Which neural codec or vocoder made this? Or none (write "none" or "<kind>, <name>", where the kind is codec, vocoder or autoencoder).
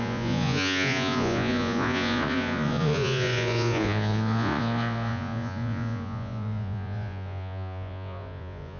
vocoder, Vocos